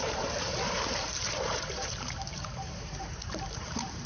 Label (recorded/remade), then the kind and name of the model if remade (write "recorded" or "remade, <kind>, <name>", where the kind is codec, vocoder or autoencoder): remade, vocoder, BigVGAN v2